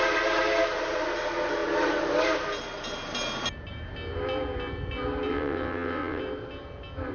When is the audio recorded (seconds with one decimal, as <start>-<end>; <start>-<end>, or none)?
0.0-5.3; 6.2-7.1